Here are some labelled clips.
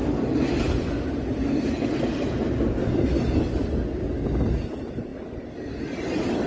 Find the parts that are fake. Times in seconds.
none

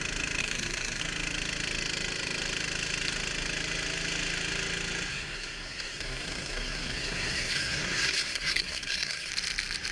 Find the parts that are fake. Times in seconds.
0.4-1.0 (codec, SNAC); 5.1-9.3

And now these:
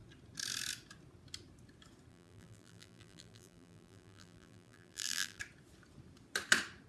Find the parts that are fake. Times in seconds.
2.1-5.4 (vocoder, BigVGAN v2)